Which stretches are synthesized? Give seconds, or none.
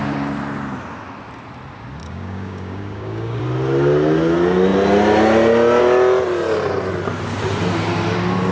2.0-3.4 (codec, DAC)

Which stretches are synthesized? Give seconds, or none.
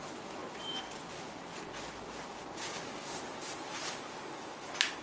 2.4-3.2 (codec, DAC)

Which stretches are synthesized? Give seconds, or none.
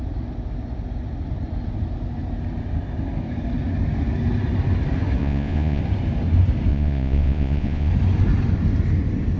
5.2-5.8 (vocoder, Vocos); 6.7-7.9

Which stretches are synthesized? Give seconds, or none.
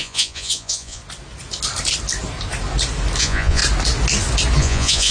0.0-1.0 (vocoder, Vocos); 3.2-3.6; 4.6-5.1